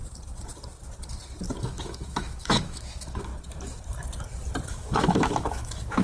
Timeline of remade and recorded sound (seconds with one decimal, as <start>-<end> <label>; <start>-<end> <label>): 0.0-1.6 recorded; 1.6-3.3 remade; 3.3-4.7 recorded; 4.7-6.0 remade